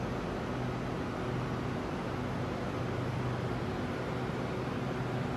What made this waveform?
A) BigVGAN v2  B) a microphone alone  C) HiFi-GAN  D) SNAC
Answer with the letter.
B